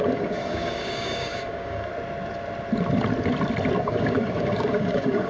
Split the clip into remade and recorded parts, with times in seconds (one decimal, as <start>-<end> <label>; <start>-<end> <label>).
0.0-1.9 remade; 1.9-3.8 recorded; 3.8-5.3 remade